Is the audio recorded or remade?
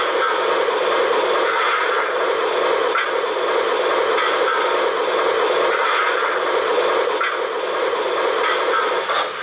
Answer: recorded